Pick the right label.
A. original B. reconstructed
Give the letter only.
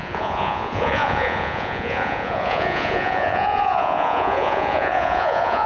B